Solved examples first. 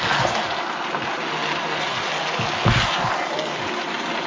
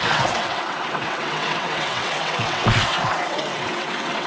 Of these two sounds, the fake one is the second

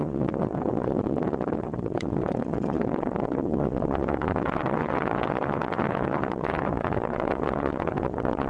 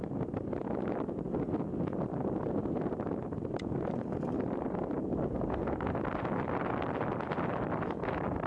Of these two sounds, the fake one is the first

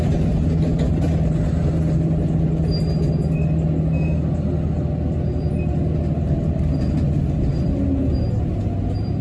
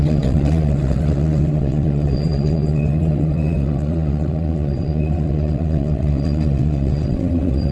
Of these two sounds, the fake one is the second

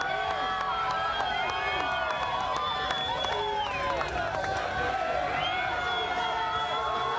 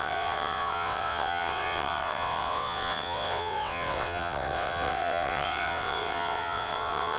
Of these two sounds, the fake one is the second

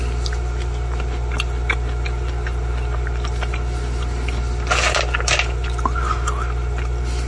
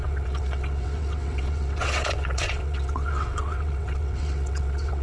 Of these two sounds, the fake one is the second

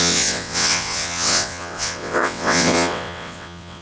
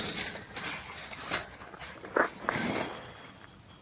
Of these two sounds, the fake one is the first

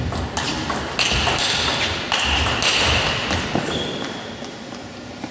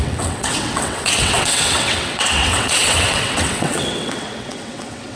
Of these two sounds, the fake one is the second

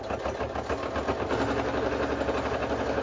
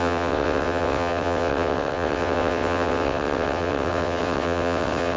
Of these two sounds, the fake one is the second